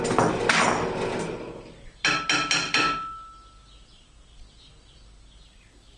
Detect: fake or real real